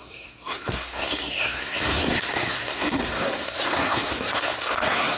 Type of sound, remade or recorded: remade